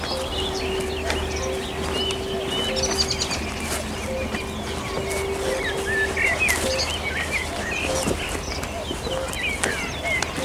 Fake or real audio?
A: real